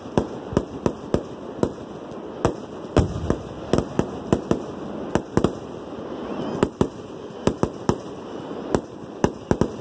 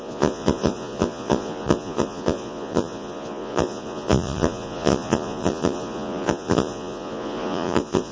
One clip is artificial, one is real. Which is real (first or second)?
first